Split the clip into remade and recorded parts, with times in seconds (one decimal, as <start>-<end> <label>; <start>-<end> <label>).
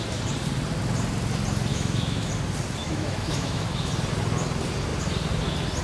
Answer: 0.0-1.7 recorded; 1.7-2.3 remade; 2.3-2.8 recorded; 2.8-3.9 remade; 3.9-5.8 recorded